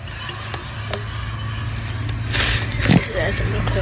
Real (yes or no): yes